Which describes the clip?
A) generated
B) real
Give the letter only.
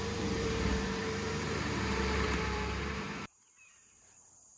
A